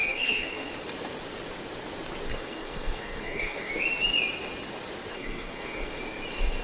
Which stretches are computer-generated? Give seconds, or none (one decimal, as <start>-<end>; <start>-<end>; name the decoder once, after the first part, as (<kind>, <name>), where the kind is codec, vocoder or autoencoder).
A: 0.0-0.7 (codec, SNAC); 2.3-3.7; 5.1-6.0